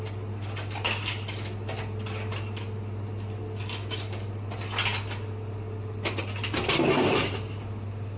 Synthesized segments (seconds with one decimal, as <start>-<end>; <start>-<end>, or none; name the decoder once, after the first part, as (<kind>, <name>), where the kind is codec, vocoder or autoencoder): none